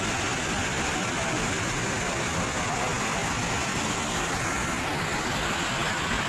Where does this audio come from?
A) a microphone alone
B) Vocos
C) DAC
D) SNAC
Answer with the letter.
A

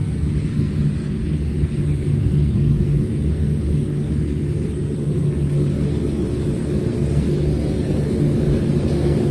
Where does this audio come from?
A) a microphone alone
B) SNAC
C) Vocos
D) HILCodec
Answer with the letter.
B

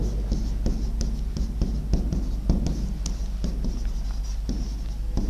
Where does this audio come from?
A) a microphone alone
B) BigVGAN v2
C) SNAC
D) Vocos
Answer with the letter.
A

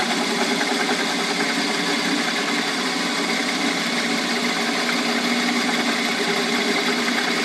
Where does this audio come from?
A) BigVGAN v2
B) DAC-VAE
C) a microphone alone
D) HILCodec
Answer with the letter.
C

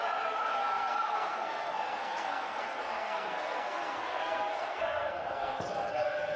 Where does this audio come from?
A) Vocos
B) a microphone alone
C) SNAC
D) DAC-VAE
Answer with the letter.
C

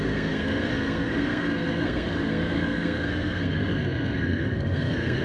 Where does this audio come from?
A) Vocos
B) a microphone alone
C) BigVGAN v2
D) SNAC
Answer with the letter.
D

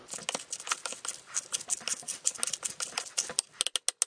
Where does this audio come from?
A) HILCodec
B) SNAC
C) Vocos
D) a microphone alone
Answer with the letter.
D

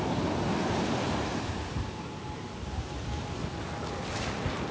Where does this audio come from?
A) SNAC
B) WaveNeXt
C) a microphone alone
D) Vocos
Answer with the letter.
C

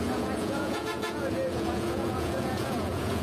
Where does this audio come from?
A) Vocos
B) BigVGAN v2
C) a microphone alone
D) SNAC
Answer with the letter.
A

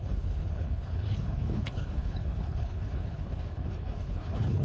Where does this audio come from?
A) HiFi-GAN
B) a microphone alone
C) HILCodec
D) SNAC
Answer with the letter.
C